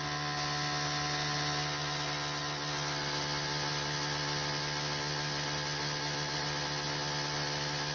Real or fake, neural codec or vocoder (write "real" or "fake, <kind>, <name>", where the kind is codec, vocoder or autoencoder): real